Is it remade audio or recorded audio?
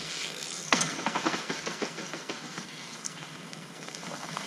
remade